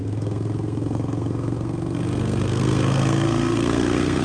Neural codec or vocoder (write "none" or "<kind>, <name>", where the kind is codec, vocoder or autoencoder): codec, SNAC